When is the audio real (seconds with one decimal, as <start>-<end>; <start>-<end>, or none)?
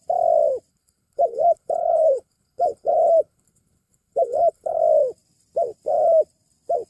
0.0-0.7; 4.8-6.9